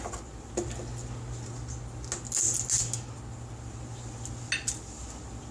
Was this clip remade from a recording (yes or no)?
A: no